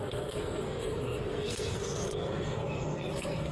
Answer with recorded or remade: remade